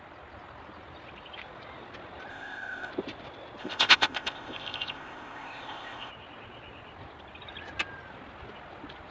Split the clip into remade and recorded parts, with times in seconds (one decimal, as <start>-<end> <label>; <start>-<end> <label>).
0.0-2.3 recorded; 2.3-2.9 remade; 2.9-3.6 recorded; 3.6-6.1 remade; 6.1-9.1 recorded